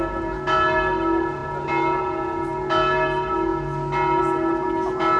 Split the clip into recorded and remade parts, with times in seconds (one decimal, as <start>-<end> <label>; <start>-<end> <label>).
0.0-5.2 recorded